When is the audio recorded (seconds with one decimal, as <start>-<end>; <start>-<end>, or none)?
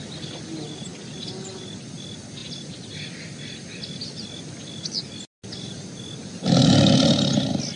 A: 0.0-7.8